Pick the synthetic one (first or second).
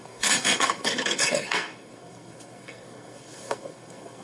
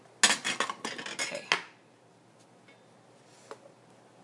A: first